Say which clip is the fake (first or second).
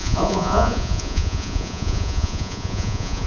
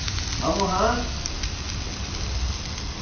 first